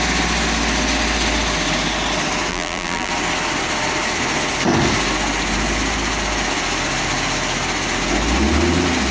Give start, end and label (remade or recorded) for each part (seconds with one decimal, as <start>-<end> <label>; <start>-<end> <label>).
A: 0.0-2.5 recorded; 2.5-3.1 remade; 3.1-9.1 recorded